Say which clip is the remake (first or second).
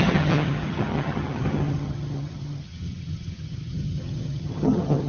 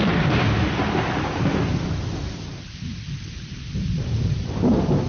first